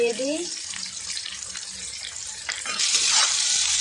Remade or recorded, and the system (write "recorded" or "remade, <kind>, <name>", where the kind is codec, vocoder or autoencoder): remade, vocoder, BigVGAN v2